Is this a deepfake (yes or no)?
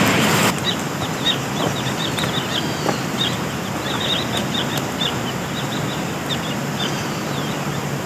yes